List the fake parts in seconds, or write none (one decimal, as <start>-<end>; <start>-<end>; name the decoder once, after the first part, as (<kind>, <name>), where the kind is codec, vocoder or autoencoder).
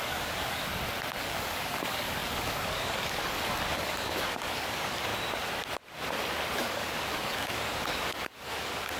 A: 0.0-0.7 (codec, DAC); 1.2-5.1; 6.6-9.0